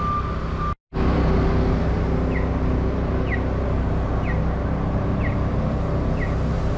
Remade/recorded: recorded